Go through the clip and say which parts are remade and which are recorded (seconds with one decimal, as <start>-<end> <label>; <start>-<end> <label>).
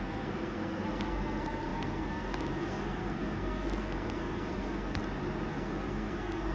0.0-5.0 remade; 5.0-5.5 recorded; 5.5-6.5 remade